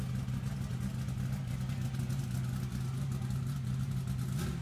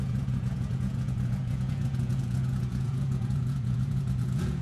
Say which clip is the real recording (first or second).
first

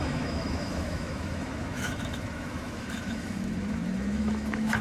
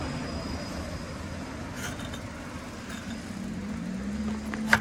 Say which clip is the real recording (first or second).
second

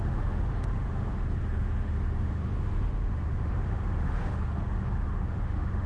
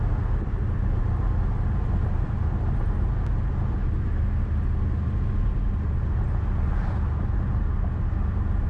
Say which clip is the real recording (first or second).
second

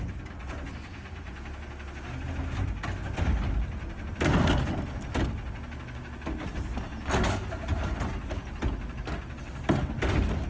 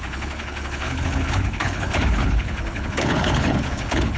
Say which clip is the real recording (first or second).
first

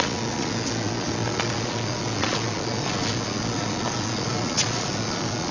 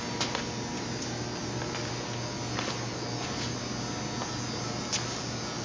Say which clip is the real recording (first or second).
second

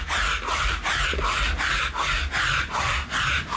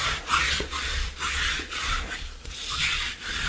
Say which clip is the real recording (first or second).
first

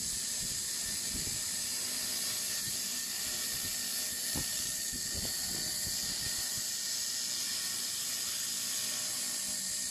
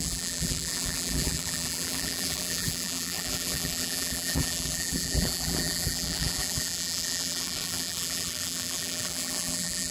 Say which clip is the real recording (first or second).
first